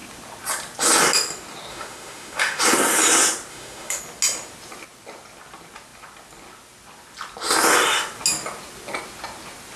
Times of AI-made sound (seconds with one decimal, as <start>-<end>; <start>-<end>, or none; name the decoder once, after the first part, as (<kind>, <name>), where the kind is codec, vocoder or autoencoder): 1.7-2.6 (autoencoder, DAC-VAE); 3.5-4.0